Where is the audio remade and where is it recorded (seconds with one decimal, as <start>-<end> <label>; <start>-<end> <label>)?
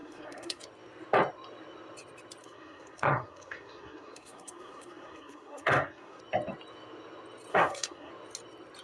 0.0-0.6 remade; 0.6-2.4 recorded; 2.4-6.2 remade; 6.2-7.5 recorded; 7.5-8.1 remade; 8.1-8.8 recorded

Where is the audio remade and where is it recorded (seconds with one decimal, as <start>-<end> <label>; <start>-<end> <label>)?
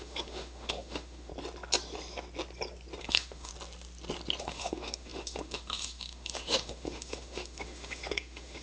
0.0-1.3 remade; 1.3-3.0 recorded; 3.0-3.5 remade; 3.5-4.4 recorded; 4.4-8.6 remade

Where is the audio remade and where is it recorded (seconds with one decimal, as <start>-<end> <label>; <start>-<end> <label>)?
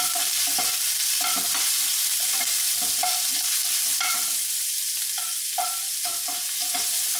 0.0-7.2 recorded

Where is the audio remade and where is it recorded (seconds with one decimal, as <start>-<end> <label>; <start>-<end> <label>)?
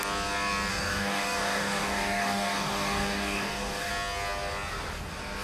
0.0-0.7 recorded; 0.7-3.9 remade; 3.9-5.4 recorded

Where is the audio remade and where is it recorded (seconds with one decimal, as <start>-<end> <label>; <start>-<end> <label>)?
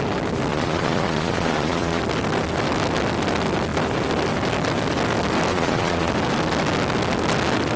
0.0-0.5 recorded; 0.5-2.0 remade; 2.0-5.5 recorded; 5.5-6.1 remade; 6.1-7.8 recorded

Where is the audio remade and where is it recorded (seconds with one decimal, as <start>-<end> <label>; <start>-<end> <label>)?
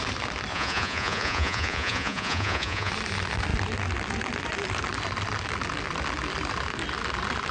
0.0-0.5 recorded; 0.5-2.9 remade; 2.9-7.5 recorded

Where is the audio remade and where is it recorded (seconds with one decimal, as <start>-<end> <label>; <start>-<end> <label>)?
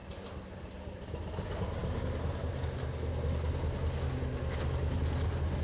0.0-5.6 recorded